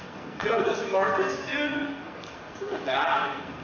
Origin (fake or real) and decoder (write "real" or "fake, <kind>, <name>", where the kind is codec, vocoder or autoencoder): fake, codec, SNAC